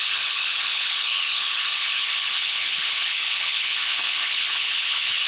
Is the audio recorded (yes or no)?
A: no